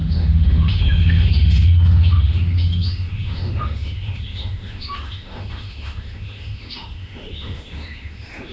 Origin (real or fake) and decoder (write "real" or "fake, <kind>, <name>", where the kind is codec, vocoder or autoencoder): fake, autoencoder, DAC-VAE